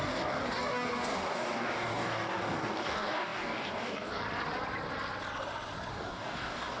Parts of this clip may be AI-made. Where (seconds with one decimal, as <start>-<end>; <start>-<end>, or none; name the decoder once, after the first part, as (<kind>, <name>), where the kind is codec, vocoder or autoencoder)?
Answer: 0.0-4.2 (codec, DAC); 5.9-6.8

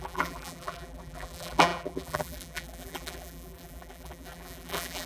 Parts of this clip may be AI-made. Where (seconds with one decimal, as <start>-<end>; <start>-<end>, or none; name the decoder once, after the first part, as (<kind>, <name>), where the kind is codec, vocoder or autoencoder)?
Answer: 0.0-5.1 (vocoder, BigVGAN v2)

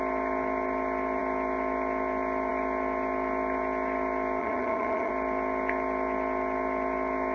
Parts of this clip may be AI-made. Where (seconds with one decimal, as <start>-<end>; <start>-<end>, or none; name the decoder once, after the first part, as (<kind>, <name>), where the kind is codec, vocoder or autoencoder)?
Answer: 4.4-5.1 (vocoder, HiFi-GAN)

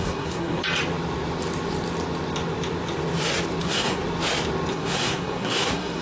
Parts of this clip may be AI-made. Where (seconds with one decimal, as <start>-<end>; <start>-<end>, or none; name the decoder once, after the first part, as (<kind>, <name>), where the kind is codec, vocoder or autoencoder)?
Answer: 0.0-0.6 (codec, SNAC); 3.6-4.0; 4.7-6.0

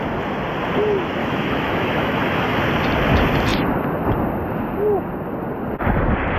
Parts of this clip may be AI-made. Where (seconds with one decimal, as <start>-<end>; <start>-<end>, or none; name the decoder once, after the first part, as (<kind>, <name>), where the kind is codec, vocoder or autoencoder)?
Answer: 1.2-2.6 (autoencoder, DAC-VAE)

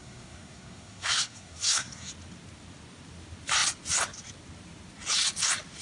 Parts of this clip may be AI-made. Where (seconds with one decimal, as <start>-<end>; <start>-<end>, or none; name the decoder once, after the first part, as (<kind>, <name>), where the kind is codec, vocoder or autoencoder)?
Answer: 0.0-2.1 (codec, SNAC)

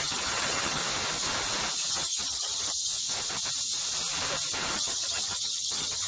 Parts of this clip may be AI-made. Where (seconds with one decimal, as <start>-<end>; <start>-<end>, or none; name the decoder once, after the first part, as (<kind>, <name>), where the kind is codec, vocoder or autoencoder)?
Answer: 0.0-0.8 (vocoder, HiFi-GAN); 1.9-2.9; 4.7-6.1

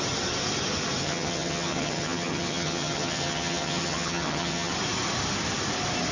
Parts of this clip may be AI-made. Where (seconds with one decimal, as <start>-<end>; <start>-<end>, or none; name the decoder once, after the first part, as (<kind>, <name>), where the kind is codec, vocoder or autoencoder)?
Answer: 1.0-4.7 (vocoder, HiFi-GAN)